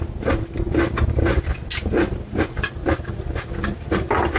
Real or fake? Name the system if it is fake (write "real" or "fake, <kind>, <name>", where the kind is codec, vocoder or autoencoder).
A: fake, vocoder, BigVGAN v2